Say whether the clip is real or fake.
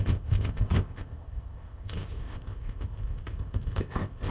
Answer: fake